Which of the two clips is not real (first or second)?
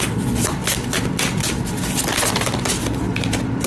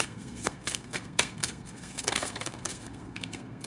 second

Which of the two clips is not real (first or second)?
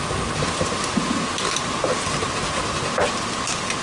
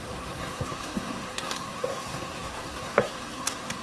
second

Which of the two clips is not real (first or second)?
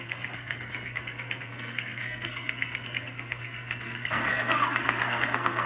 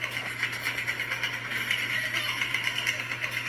first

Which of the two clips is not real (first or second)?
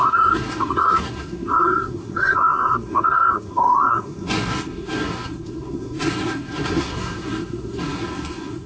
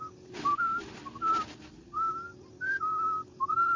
first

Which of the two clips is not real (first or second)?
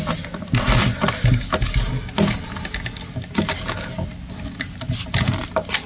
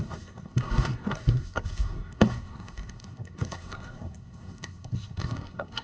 second